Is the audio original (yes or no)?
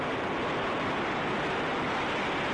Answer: yes